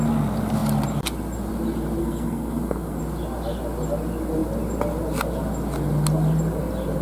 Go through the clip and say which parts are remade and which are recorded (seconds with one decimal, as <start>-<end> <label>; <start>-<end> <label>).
0.0-2.0 recorded; 2.0-3.0 remade; 3.0-7.0 recorded